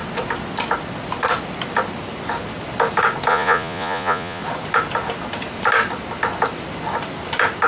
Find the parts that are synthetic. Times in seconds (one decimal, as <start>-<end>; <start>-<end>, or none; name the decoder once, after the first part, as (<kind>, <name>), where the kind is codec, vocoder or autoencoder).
3.3-4.4 (vocoder, Vocos)